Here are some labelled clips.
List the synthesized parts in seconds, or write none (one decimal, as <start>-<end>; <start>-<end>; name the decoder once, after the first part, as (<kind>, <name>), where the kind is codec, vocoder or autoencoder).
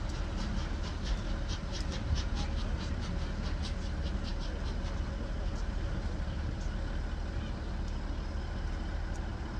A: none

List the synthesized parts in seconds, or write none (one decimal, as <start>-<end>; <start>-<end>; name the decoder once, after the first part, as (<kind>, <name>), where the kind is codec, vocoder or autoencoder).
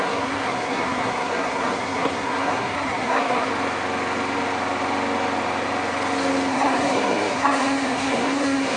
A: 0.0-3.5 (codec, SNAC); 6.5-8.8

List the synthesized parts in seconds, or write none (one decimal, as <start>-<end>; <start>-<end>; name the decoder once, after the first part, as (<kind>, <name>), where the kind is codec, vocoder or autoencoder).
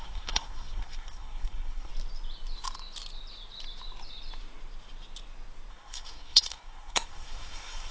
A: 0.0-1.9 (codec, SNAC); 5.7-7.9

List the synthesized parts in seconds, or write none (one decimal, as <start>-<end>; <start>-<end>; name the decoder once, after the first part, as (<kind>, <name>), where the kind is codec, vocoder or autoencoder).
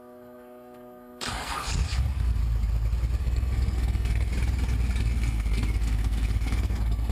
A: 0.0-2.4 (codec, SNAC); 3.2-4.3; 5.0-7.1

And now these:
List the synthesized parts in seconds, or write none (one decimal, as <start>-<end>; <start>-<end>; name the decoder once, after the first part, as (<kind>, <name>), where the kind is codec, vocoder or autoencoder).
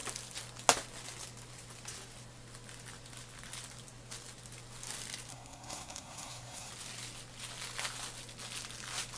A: 5.3-6.7 (codec, SNAC)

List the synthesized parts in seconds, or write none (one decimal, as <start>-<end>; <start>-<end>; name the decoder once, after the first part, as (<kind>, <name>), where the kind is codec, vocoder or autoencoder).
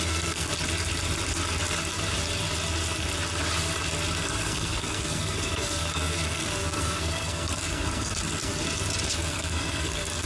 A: 0.0-0.5 (codec, SNAC); 4.2-8.5; 9.1-10.3